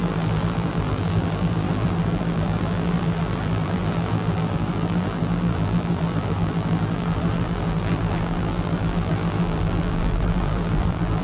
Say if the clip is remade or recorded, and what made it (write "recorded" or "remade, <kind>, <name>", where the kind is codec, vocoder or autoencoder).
remade, vocoder, BigVGAN v2